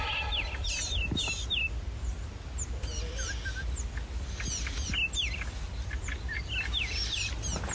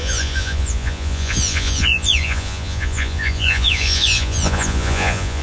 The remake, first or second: second